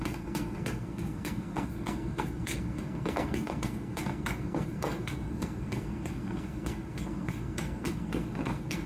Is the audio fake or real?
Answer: fake